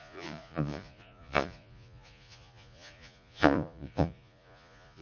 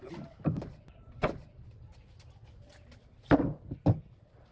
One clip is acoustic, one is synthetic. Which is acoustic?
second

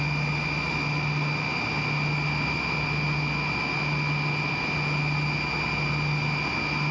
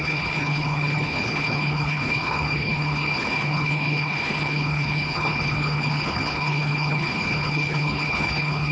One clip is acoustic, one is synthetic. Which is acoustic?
first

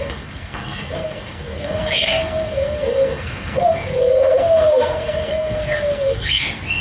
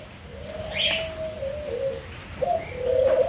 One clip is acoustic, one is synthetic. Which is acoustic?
second